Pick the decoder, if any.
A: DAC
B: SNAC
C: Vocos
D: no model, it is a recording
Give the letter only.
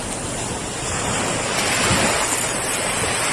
D